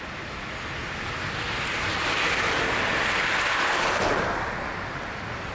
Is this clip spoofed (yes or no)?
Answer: no